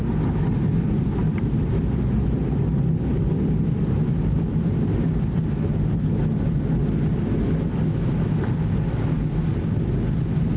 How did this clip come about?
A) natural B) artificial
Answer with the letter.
A